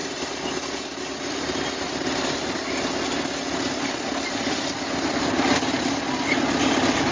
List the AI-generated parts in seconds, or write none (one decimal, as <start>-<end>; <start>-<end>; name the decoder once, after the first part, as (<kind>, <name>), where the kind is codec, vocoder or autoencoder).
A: none